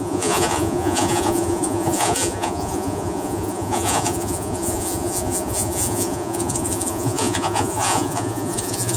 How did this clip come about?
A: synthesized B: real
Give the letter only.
A